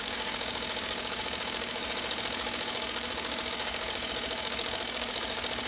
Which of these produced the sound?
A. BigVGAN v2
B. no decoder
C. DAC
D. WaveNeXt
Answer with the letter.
C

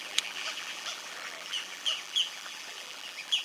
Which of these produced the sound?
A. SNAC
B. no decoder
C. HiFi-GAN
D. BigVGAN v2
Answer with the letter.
D